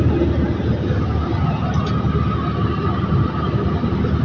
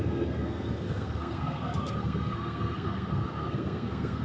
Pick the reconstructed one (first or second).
second